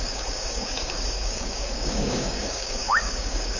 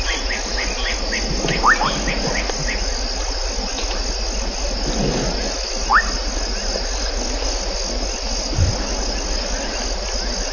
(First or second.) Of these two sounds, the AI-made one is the first